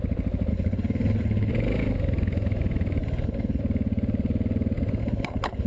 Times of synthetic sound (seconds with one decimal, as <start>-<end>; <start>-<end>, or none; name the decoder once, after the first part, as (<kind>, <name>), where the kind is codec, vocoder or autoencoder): 0.5-1.5 (codec, HILCodec); 3.0-3.6; 5.0-5.7

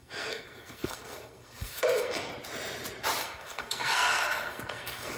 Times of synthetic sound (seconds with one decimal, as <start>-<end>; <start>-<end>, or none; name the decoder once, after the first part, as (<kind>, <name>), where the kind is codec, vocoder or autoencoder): 0.0-2.3 (codec, SNAC); 3.2-5.2